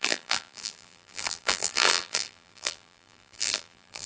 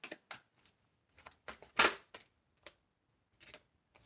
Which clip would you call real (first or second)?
second